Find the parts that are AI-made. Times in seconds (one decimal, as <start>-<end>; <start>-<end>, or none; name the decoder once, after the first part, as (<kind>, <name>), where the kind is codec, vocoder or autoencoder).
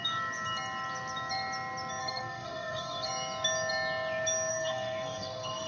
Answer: 2.0-3.1 (codec, SNAC); 4.5-5.7